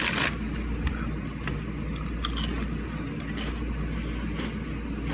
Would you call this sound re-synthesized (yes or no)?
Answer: no